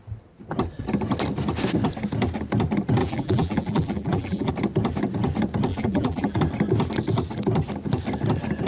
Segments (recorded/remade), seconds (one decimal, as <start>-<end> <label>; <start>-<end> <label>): 0.0-3.0 recorded; 3.0-4.5 remade; 4.5-5.7 recorded; 5.7-6.4 remade; 6.4-8.7 recorded